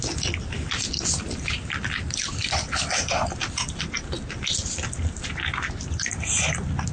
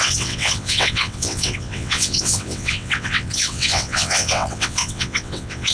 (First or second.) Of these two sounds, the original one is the first